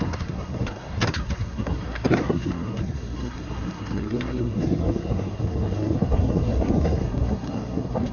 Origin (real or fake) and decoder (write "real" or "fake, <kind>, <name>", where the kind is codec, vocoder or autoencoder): fake, codec, SNAC